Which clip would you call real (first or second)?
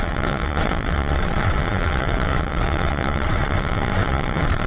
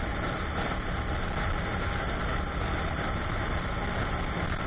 second